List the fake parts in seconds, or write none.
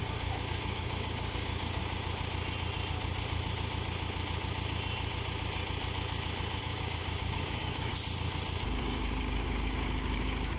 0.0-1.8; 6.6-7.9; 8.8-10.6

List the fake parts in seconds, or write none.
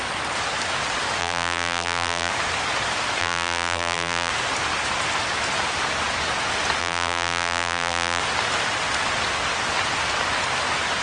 1.2-2.3; 3.2-4.3; 6.8-8.2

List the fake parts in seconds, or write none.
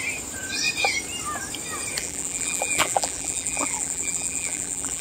2.0-5.0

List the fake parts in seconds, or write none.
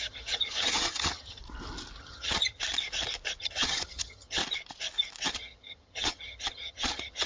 0.0-1.4; 2.0-2.6; 3.4-4.4; 5.3-7.3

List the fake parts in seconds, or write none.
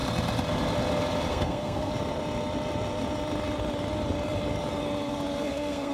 1.3-1.9; 5.4-5.9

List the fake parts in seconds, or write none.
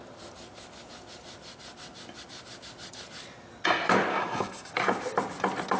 4.1-4.7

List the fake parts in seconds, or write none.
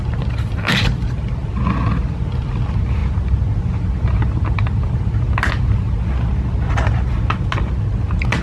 none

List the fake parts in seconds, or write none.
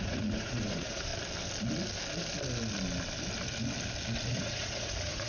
0.0-1.1; 4.3-5.3